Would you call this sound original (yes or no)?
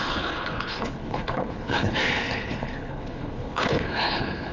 no